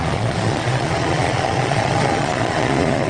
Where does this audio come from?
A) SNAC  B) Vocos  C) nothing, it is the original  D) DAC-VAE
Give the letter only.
B